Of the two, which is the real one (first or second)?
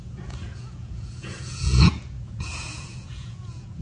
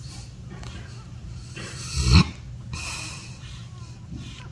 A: second